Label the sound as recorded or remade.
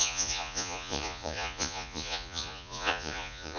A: remade